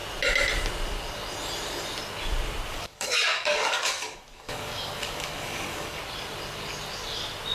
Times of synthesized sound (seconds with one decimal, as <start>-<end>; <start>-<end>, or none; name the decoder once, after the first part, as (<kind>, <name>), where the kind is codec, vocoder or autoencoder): 2.7-6.0 (codec, DAC)